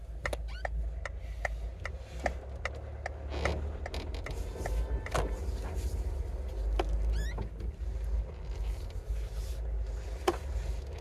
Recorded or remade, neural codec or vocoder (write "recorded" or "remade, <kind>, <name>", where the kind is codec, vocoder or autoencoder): recorded